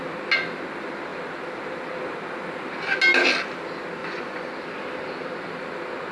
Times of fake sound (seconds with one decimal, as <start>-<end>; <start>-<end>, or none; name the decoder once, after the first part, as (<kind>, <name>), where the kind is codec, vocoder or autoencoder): 4.0-4.5 (vocoder, Vocos)